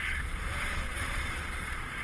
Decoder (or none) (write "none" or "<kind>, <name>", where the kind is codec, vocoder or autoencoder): vocoder, Vocos